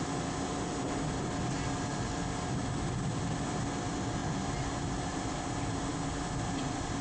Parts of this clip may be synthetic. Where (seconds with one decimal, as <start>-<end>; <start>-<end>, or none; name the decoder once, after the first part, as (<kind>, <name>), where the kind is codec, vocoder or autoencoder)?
none